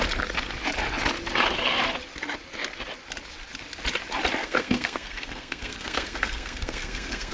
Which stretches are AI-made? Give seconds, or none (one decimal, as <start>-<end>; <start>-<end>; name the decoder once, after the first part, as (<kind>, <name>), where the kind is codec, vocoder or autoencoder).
4.4-7.3 (codec, SNAC)